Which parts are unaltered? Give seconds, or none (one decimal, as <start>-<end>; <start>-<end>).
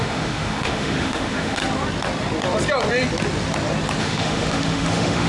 1.6-4.0